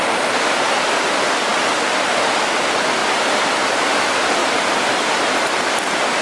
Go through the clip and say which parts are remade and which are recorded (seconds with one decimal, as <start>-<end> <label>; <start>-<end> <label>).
0.0-4.4 recorded; 4.4-5.7 remade; 5.7-6.2 recorded